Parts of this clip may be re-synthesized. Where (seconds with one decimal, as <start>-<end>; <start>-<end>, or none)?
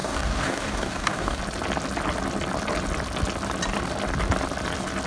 0.0-1.4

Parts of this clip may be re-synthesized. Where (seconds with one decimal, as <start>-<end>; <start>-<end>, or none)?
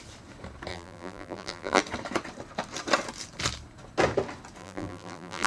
0.7-1.8; 4.6-5.5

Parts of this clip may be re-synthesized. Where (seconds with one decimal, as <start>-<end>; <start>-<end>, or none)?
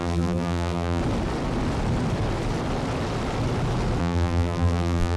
0.0-1.0; 4.0-5.2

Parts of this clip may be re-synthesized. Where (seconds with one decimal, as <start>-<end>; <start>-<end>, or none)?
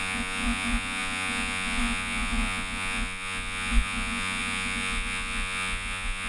0.0-6.3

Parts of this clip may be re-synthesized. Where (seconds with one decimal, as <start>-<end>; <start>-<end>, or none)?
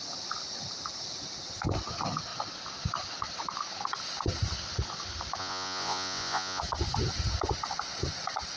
5.4-6.6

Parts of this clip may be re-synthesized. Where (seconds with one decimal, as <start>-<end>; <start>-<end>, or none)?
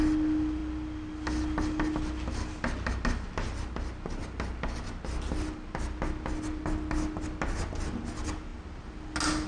none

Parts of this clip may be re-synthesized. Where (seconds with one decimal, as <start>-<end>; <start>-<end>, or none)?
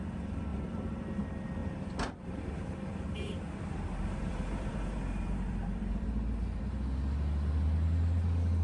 0.5-1.1; 1.6-6.6